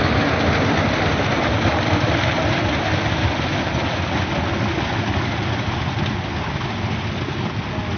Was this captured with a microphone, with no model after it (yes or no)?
yes